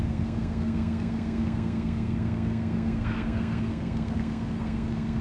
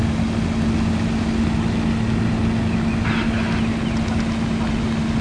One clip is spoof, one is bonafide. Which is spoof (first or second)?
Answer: first